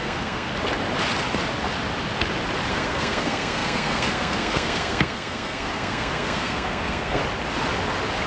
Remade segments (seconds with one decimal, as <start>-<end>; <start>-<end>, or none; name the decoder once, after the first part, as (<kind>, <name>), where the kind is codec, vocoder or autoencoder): 0.0-0.5 (codec, SNAC); 2.7-7.2